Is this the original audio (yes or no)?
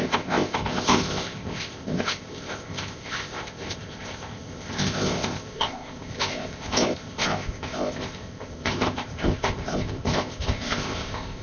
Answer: no